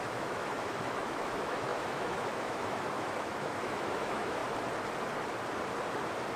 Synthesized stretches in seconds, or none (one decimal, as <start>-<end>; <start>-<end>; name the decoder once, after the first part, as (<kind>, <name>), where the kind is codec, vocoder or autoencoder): 0.0-4.4 (autoencoder, DAC-VAE)